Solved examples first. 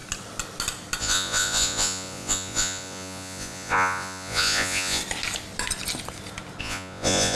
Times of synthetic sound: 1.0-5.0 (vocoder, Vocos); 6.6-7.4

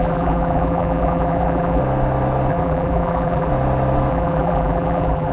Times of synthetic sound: 0.0-1.8 (vocoder, BigVGAN v2); 2.5-3.5; 4.1-5.3

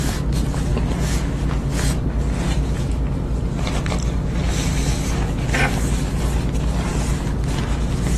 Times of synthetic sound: none

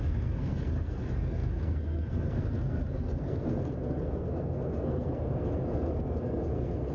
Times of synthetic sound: 0.0-6.9 (codec, SNAC)

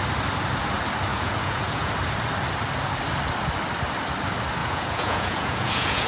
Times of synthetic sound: 1.1-1.9 (vocoder, Vocos); 4.6-6.1

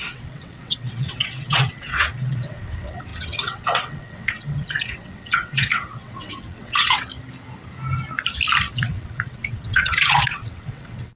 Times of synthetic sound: 0.0-7.1 (vocoder, WaveNeXt); 8.7-11.2

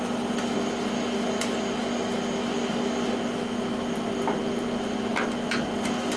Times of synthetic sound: none

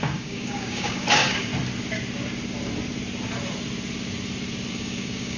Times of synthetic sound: 0.0-1.5 (codec, DAC); 4.7-5.4